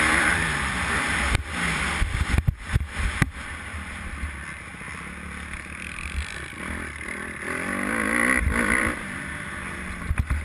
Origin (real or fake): real